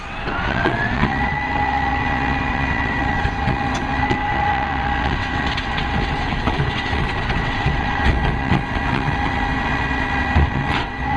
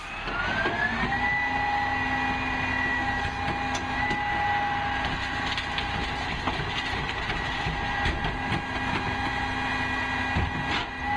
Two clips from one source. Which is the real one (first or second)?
second